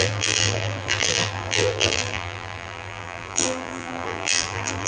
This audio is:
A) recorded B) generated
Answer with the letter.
B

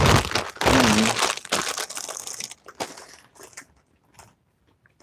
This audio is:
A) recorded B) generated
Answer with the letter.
A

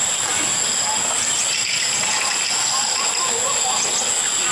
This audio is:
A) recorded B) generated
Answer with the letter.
A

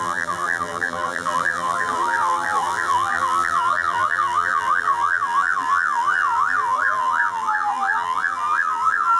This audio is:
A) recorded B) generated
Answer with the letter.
B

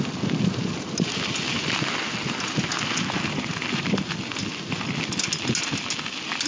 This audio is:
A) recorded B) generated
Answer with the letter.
A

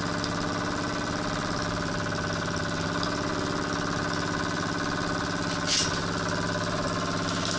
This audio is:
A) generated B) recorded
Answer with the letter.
A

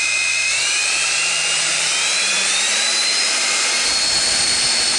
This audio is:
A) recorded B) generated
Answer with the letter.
B